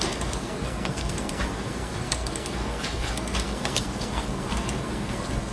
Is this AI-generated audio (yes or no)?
yes